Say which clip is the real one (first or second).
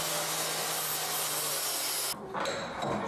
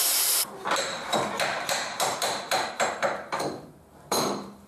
first